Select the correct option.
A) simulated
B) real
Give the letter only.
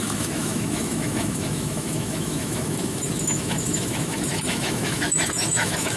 A